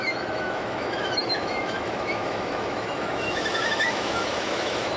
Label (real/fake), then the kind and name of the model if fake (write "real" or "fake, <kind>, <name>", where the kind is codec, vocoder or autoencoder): fake, autoencoder, DAC-VAE